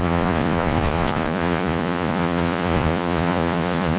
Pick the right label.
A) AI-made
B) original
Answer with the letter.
A